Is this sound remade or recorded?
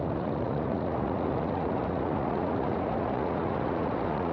remade